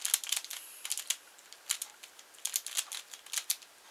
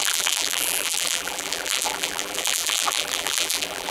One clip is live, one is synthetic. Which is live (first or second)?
first